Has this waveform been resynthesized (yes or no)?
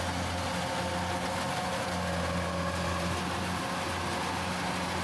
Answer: no